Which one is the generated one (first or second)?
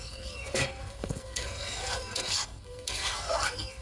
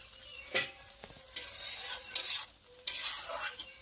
first